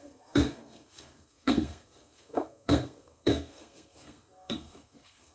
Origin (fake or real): fake